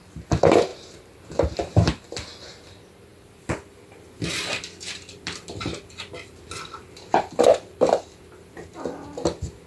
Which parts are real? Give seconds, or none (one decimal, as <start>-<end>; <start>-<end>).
0.0-3.1; 8.2-9.7